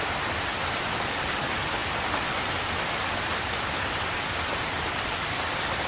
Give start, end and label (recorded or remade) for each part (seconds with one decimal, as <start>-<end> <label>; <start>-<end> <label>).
0.0-5.9 recorded